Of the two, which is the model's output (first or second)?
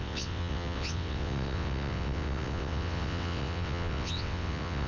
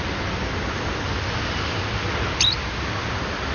first